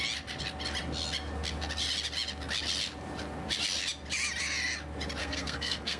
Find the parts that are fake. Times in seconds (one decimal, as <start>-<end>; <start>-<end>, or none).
5.2-6.0